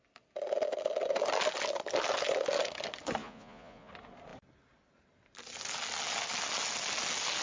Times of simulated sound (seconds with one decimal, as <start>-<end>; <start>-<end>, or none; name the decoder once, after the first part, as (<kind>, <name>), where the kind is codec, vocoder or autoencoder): 3.2-3.9 (vocoder, Vocos)